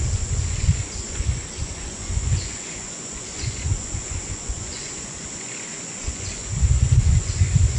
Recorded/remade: remade